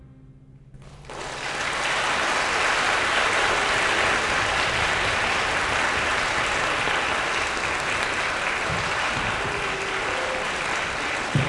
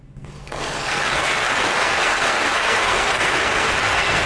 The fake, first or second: second